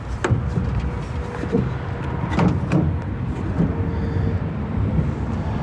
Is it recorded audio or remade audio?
recorded